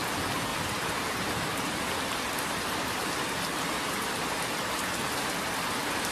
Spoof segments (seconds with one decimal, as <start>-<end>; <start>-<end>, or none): none